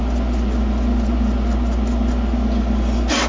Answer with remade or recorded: recorded